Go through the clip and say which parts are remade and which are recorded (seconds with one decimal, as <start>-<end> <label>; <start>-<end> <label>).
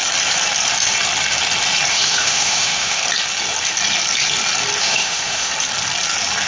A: 0.0-1.9 recorded; 1.9-3.0 remade; 3.0-4.8 recorded; 4.8-5.5 remade; 5.5-6.5 recorded